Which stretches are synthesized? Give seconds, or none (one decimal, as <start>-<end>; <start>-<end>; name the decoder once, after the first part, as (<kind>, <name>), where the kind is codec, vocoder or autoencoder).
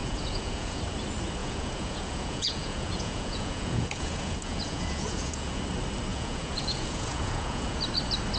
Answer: 0.0-0.8 (vocoder, Vocos); 1.4-5.6; 6.1-7.8